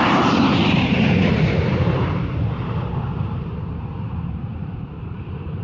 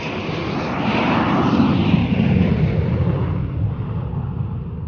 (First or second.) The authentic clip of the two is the second